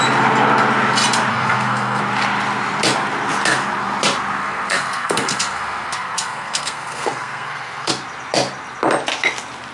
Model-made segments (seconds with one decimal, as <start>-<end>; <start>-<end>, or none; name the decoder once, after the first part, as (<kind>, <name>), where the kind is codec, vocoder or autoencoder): 1.3-2.0 (codec, SNAC); 4.4-7.9

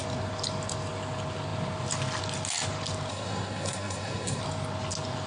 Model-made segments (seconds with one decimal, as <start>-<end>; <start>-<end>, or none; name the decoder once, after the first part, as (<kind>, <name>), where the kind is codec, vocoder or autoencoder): 3.1-4.4 (codec, SNAC)